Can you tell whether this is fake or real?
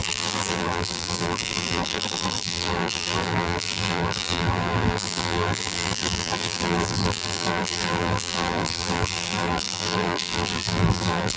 fake